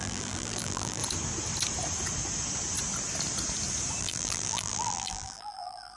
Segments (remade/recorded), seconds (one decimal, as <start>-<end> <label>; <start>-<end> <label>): 0.0-1.0 remade; 1.0-4.0 recorded; 4.0-6.0 remade